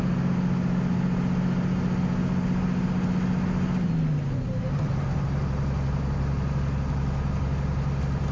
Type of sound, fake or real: real